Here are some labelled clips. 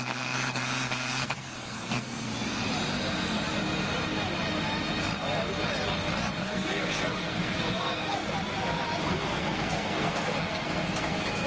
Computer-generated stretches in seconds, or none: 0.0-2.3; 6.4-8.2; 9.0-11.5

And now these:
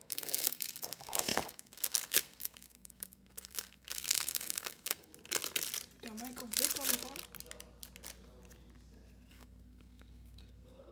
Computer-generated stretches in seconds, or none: 0.0-5.1; 9.3-10.9

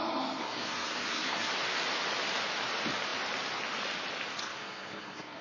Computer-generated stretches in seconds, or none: 0.4-1.5; 4.4-5.4

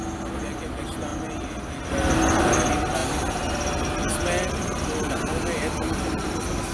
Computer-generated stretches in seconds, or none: none

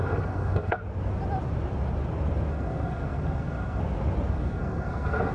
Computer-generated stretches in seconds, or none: 0.0-0.8; 2.5-3.8; 4.3-5.3